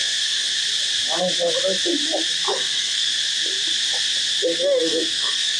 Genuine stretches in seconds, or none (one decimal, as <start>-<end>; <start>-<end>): 0.5-2.5; 3.1-4.5